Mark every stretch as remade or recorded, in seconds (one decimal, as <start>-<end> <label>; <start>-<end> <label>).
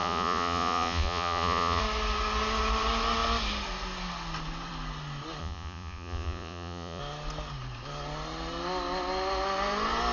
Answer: 0.0-1.8 remade; 1.8-5.4 recorded; 5.4-7.0 remade; 7.0-10.1 recorded